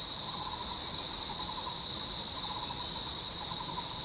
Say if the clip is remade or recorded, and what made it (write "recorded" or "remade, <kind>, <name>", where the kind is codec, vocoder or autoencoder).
recorded